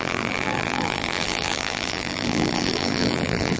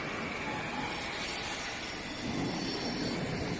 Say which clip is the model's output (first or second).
first